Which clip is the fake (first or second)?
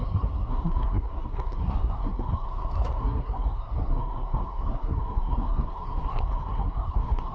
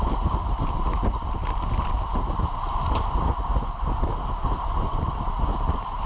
first